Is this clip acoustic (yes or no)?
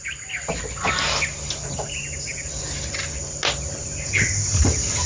yes